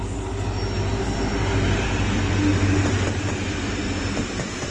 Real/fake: real